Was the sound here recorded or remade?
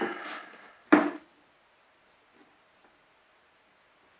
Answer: recorded